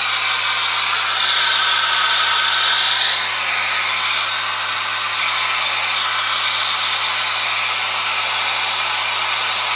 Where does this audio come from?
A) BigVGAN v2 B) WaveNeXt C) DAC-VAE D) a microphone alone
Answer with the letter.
D